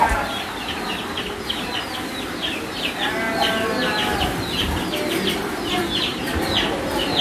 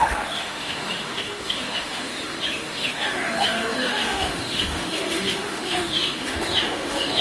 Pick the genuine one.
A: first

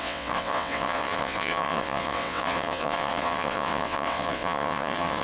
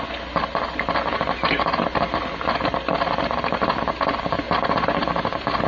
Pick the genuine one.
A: second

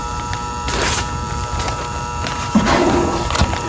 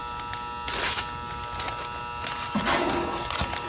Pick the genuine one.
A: second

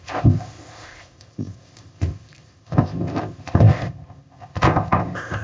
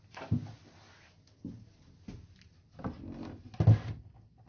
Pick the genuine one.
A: second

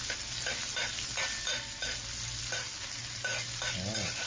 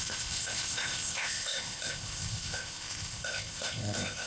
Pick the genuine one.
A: first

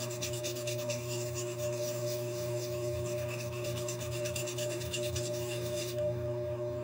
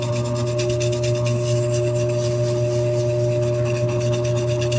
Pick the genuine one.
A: second